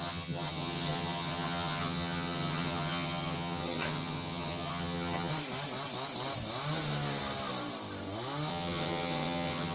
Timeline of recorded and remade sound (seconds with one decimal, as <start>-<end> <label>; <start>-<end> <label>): 0.0-5.3 remade; 5.3-8.5 recorded; 8.5-9.7 remade

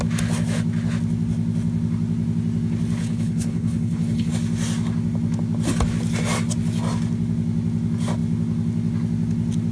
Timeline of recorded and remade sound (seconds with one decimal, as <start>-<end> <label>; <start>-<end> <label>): 0.0-3.0 recorded; 3.0-4.3 remade; 4.3-9.7 recorded

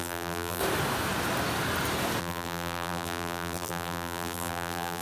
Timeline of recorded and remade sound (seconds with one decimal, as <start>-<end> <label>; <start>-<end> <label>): 0.0-0.6 remade; 0.6-2.2 recorded; 2.2-5.0 remade

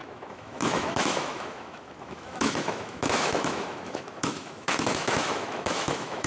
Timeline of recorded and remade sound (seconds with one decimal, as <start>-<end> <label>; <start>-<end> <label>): 0.0-6.3 remade

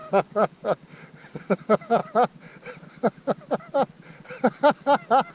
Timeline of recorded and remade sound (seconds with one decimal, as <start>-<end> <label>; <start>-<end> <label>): 0.0-2.0 remade; 2.0-5.3 recorded

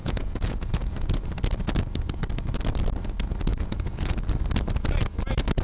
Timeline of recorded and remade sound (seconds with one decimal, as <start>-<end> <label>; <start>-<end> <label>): 0.0-1.1 remade; 1.1-3.5 recorded; 3.5-4.3 remade; 4.3-5.6 recorded

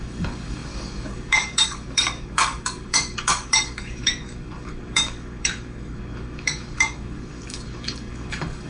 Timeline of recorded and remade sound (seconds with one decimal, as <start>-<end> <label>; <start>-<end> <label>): 0.0-8.7 remade

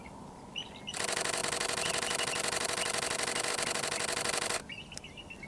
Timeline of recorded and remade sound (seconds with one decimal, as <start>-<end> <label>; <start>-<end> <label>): 0.0-5.5 recorded